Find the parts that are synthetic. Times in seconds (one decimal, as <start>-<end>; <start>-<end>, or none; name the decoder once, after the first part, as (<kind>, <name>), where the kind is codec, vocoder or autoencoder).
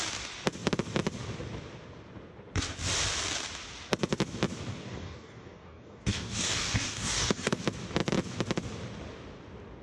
4.8-7.6 (codec, DAC)